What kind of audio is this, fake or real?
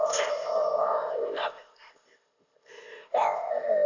fake